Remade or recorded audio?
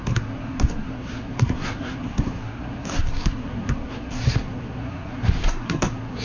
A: remade